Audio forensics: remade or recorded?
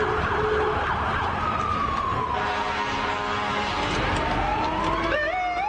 recorded